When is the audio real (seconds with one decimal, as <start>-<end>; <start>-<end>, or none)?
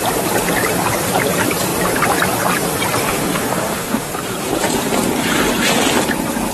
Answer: 0.0-3.0; 4.1-6.5